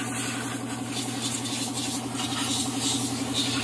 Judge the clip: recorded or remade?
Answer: recorded